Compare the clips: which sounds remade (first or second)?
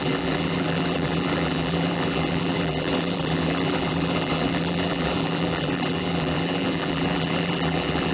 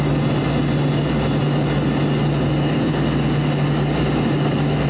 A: first